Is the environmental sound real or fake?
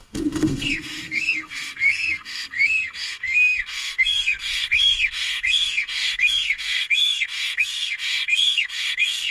fake